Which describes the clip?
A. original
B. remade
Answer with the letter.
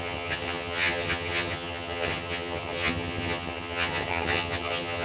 B